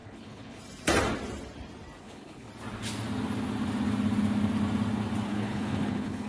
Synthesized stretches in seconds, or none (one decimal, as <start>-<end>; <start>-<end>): 0.0-0.6; 2.0-2.5; 5.3-6.3